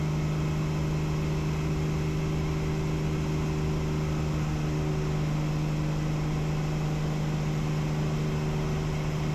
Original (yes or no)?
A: yes